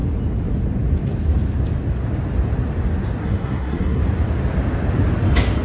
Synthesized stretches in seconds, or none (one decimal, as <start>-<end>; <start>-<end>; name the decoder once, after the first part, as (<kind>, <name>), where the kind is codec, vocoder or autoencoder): 3.2-4.0 (codec, SNAC)